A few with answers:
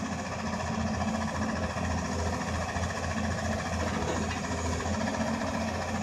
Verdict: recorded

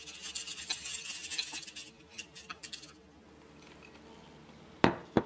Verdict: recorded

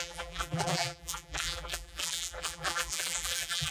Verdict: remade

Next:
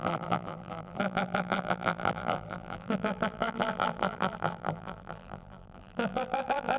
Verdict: remade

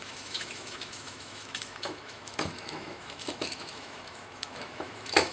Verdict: remade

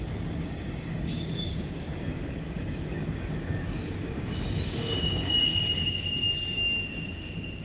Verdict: remade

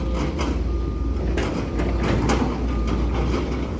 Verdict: recorded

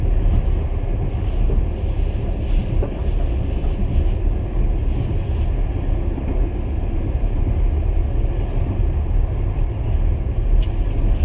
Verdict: recorded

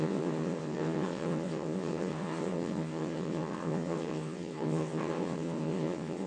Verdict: remade